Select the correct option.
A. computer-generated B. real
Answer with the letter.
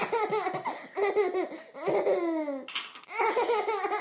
B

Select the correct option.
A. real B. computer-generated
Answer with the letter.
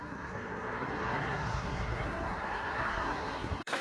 B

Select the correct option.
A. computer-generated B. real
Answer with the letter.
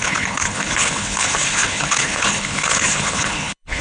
A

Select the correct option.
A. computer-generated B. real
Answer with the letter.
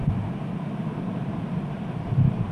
B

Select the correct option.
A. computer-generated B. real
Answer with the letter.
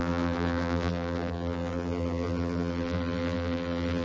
A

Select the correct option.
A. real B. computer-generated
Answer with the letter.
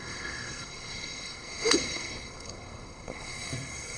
B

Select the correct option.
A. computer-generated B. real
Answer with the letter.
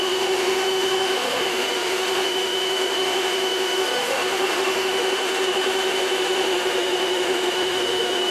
A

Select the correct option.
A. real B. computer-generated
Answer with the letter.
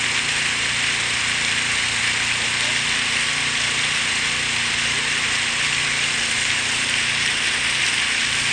A